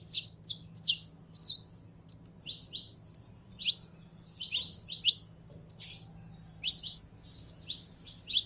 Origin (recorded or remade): recorded